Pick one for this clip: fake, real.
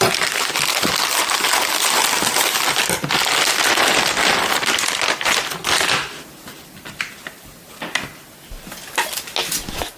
real